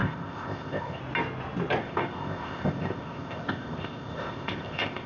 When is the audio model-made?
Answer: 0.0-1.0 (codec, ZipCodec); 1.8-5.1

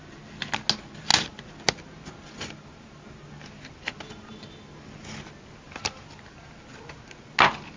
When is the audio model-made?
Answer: none

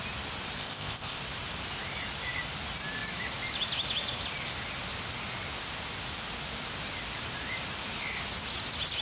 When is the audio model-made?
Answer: 0.6-1.2 (codec, ZipCodec)

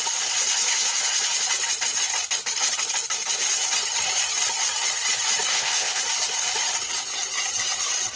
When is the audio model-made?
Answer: 5.5-6.0 (codec, ZipCodec)

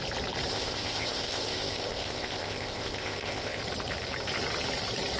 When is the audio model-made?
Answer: 0.5-3.6 (codec, ZipCodec)

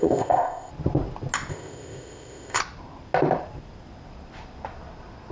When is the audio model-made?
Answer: 0.0-0.7 (codec, ZipCodec); 1.5-2.6

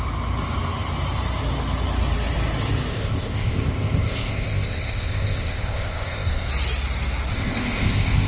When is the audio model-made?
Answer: 2.9-6.5 (codec, ZipCodec); 7.3-8.3